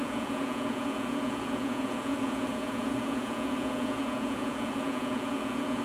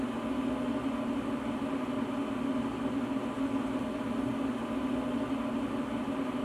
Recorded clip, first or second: second